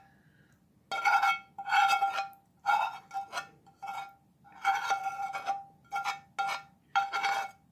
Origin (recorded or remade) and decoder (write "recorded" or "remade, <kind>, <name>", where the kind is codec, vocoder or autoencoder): recorded